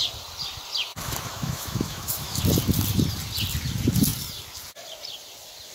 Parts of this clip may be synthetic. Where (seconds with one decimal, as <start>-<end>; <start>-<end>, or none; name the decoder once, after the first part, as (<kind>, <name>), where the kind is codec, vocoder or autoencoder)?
0.9-2.4 (autoencoder, DAC-VAE)